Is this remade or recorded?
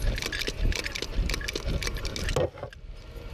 recorded